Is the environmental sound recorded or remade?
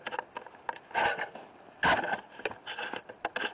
recorded